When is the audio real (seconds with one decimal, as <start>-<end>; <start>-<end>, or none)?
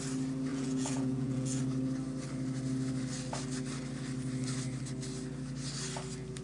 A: 0.0-0.5; 1.6-6.4